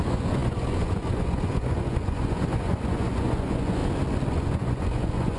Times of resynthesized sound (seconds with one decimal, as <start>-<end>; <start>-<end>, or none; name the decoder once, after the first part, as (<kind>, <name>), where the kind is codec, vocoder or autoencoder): 0.0-3.8 (vocoder, Vocos); 4.3-5.4